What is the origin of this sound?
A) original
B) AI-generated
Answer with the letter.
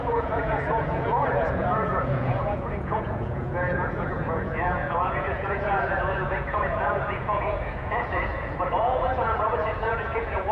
B